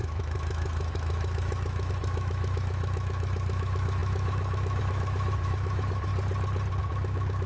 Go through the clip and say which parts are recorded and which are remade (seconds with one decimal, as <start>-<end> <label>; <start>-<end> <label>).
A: 0.0-6.1 remade; 6.1-6.8 recorded; 6.8-7.5 remade